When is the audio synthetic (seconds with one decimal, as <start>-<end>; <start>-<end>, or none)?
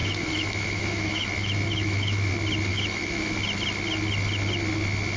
0.0-2.3; 2.7-3.4